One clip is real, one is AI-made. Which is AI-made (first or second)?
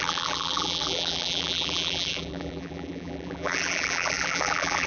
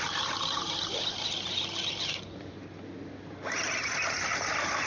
first